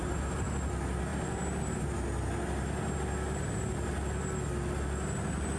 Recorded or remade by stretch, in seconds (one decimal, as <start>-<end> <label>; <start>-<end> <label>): 0.0-5.6 recorded